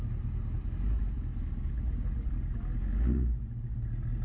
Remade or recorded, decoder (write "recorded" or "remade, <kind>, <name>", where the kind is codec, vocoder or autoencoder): recorded